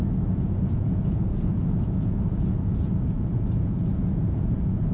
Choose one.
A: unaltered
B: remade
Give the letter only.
B